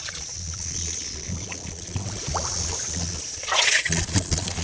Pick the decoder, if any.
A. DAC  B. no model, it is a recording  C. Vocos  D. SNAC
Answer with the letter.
C